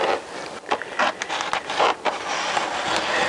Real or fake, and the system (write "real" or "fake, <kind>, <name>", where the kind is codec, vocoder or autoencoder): real